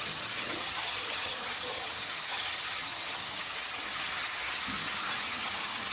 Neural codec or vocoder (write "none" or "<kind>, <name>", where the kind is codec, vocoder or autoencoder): vocoder, HiFi-GAN